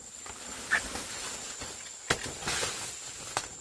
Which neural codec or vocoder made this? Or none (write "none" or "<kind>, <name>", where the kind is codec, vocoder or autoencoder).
none